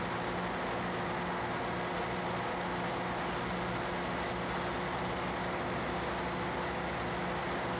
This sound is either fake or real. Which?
real